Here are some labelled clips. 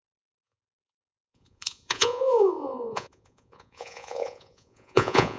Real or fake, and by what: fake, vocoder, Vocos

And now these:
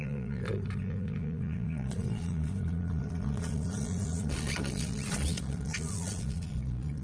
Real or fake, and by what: fake, vocoder, Vocos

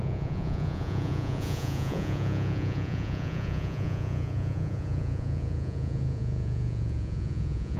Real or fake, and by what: fake, vocoder, Vocos